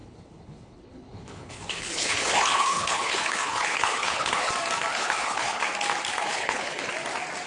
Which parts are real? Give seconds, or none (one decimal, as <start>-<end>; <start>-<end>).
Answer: 4.5-4.9; 5.6-6.2; 6.9-7.5